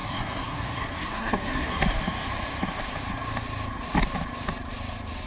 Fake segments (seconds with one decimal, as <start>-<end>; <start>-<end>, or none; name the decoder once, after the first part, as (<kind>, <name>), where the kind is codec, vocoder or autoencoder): 0.0-1.8 (codec, SNAC)